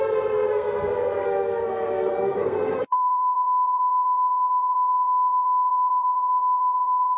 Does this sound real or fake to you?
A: fake